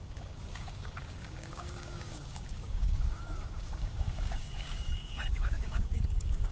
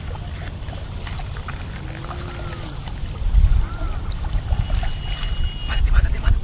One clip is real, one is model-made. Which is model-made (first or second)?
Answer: first